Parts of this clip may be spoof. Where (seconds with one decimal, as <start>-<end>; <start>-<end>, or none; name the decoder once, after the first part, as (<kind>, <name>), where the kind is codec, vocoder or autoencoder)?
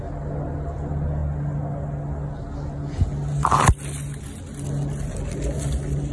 none